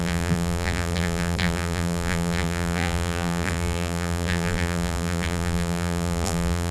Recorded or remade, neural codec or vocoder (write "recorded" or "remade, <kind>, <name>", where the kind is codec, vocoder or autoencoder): remade, vocoder, BigVGAN v2